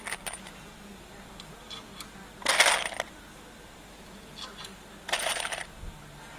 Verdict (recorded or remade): recorded